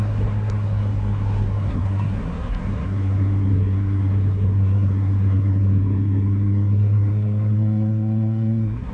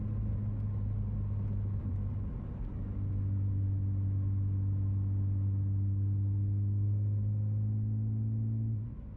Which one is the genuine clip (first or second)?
second